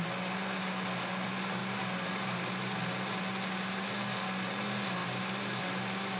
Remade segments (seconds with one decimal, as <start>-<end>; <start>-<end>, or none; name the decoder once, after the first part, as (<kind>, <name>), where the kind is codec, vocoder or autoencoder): none